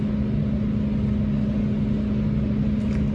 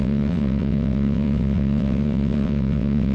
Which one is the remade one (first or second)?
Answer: second